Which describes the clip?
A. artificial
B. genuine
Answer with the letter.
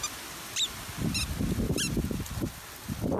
B